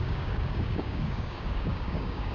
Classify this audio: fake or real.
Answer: fake